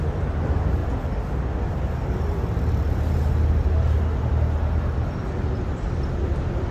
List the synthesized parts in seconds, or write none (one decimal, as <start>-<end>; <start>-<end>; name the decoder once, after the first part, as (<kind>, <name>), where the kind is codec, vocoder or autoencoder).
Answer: none